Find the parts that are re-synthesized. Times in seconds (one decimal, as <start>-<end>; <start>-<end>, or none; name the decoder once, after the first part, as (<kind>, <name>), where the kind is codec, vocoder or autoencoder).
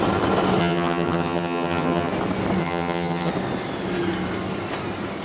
0.6-2.1 (vocoder, HiFi-GAN); 2.6-3.3